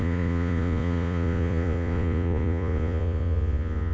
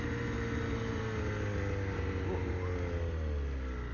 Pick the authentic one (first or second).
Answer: second